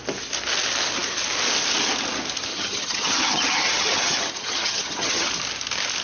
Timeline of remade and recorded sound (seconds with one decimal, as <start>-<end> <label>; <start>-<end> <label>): 0.0-2.5 recorded; 2.5-5.3 remade; 5.3-6.0 recorded